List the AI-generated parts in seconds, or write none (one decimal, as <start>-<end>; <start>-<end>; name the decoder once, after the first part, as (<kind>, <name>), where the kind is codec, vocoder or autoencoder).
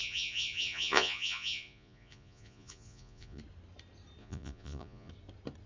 0.0-3.4 (vocoder, Vocos); 4.2-5.1